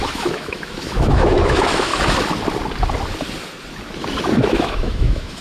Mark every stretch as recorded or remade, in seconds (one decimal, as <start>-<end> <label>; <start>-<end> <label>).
0.0-1.9 remade; 1.9-4.3 recorded; 4.3-5.4 remade